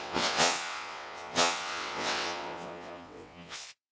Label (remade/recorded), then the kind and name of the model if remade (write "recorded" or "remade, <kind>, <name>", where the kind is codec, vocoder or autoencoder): remade, vocoder, WaveNeXt